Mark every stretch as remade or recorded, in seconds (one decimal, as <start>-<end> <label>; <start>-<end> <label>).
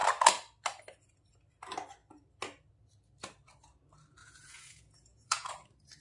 0.0-4.2 recorded; 4.2-5.5 remade; 5.5-6.0 recorded